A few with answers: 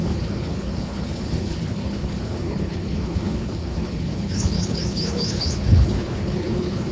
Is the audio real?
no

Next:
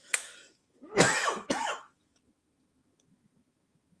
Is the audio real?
no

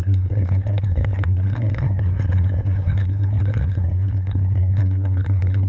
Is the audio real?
no